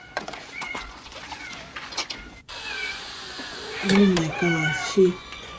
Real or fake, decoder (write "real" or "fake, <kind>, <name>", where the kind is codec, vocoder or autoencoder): fake, vocoder, Vocos